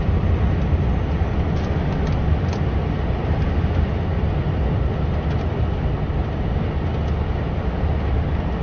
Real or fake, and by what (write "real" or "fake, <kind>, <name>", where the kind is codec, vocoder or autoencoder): real